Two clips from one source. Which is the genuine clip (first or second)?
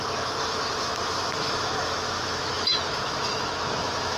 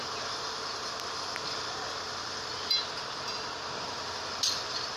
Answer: second